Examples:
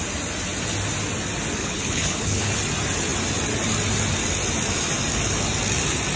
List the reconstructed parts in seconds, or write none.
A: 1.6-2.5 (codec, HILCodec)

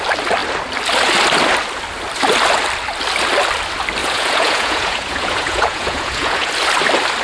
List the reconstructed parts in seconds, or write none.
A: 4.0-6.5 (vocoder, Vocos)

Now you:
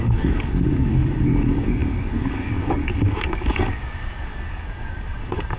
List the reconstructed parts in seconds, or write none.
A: 0.0-5.6 (codec, DAC)

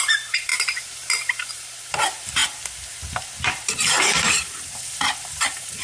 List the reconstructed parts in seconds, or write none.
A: 0.0-2.4 (vocoder, BigVGAN v2); 3.6-5.8

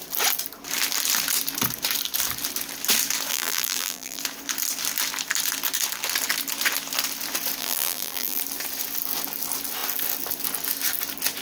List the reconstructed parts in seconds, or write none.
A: 3.3-4.2 (vocoder, BigVGAN v2); 7.6-8.4